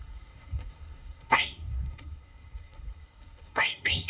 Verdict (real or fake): fake